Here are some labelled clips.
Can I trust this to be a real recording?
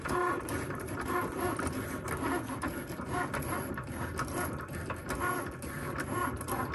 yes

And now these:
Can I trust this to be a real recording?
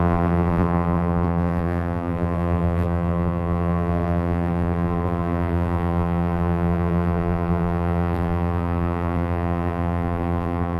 no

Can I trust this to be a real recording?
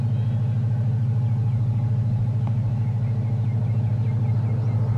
yes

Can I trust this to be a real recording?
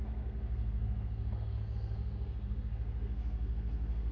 no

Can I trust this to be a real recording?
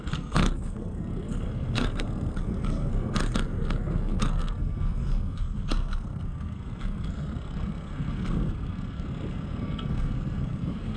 no